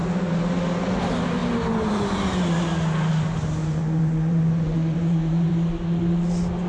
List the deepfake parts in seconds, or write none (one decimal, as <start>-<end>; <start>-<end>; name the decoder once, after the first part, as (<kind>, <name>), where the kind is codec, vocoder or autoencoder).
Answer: 3.6-5.5 (vocoder, Vocos)